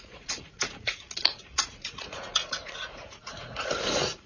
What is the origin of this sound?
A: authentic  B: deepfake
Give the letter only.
B